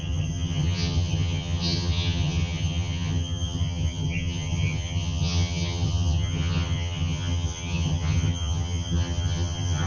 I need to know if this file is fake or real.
fake